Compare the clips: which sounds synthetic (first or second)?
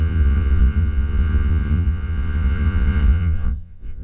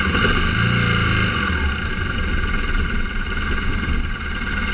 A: first